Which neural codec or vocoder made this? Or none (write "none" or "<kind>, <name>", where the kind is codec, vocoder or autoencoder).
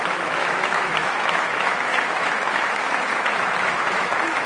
autoencoder, DAC-VAE